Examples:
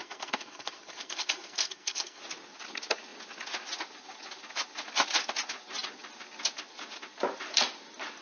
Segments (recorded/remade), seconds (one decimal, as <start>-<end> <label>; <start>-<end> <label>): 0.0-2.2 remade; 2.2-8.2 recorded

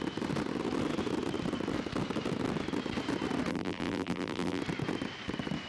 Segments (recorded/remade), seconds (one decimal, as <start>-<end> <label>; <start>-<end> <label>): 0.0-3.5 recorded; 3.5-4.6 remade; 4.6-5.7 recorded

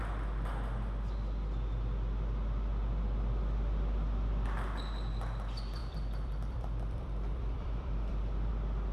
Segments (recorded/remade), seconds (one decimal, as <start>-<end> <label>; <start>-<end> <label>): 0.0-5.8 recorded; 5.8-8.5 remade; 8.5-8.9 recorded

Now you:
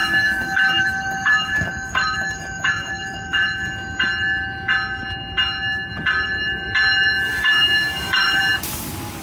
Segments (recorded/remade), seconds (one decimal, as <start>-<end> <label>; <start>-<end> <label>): 0.0-3.6 remade; 3.6-7.3 recorded; 7.3-8.4 remade; 8.4-9.2 recorded